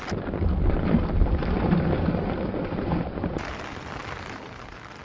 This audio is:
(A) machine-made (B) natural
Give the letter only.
B